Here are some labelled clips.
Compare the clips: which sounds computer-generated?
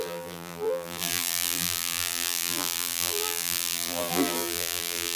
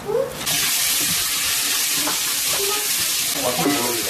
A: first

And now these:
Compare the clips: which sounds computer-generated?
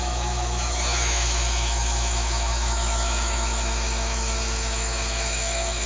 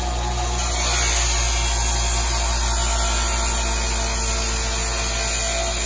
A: first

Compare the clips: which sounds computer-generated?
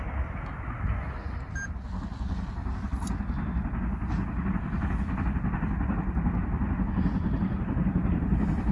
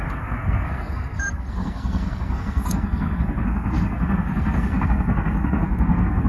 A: second